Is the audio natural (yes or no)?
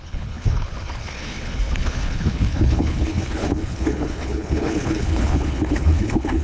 no